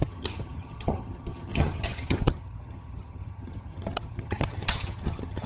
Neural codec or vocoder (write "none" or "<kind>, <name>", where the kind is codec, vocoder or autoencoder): vocoder, HiFi-GAN